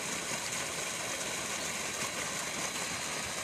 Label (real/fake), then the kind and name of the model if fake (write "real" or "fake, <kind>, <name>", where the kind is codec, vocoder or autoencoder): real